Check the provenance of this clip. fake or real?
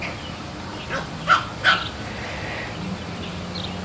real